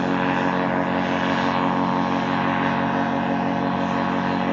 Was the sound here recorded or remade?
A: recorded